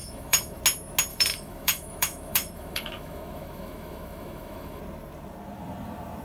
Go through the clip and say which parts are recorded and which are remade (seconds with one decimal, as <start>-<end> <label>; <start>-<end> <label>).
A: 0.0-0.6 remade; 0.6-1.1 recorded; 1.1-4.8 remade; 4.8-6.2 recorded